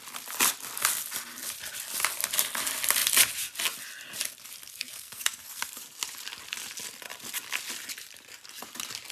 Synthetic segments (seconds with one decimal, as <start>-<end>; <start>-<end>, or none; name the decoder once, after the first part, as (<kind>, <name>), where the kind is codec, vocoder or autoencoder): 4.7-5.8 (codec, SNAC)